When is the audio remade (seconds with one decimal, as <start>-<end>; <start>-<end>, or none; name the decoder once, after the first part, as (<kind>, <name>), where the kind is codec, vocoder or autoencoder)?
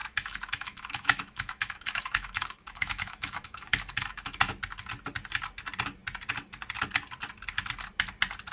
0.0-4.6 (autoencoder, DAC-VAE)